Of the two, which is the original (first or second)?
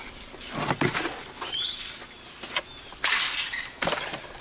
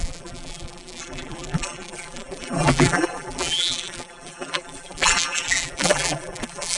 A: first